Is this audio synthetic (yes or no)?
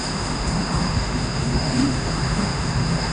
yes